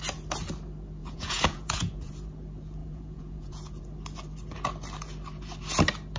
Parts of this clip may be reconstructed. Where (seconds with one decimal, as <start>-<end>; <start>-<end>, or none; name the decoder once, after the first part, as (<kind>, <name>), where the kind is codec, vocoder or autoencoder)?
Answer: 1.0-2.1 (vocoder, Vocos); 2.8-3.8

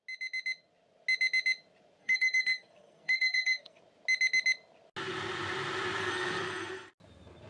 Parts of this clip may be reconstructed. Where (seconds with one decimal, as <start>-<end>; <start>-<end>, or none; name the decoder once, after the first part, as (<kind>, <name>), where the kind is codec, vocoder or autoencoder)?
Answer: 2.0-3.8 (codec, SNAC); 6.0-6.9

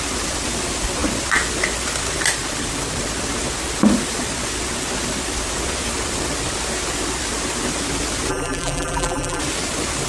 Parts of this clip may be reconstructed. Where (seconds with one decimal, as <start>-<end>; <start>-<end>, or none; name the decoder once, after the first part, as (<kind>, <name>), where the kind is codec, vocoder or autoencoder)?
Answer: 8.3-9.4 (vocoder, BigVGAN v2)

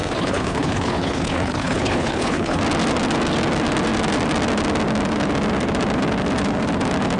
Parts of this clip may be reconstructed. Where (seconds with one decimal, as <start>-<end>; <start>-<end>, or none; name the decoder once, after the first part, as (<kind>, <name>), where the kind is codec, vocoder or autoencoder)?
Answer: 0.0-2.6 (codec, HILCodec)